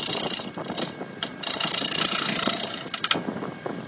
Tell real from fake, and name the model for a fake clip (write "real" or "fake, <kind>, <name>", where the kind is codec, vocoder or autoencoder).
real